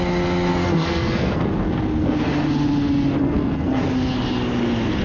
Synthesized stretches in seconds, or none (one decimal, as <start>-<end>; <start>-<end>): 0.5-2.3; 3.2-3.8